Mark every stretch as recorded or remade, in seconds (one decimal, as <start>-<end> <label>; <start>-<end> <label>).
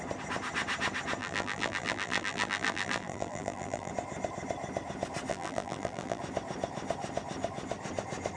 0.0-1.2 recorded; 1.2-3.9 remade; 3.9-5.3 recorded; 5.3-6.2 remade; 6.2-8.4 recorded